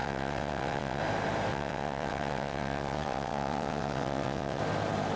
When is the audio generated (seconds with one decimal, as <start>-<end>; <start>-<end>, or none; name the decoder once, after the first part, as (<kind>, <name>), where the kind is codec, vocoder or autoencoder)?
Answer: 0.0-1.0 (vocoder, WaveNeXt); 1.5-4.6

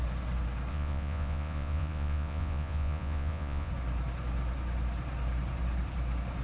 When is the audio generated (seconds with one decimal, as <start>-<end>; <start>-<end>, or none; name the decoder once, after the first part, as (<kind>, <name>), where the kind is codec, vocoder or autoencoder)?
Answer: 0.7-3.7 (vocoder, Vocos)